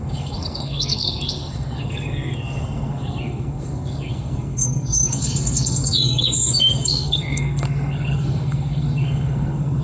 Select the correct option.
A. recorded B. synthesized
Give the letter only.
B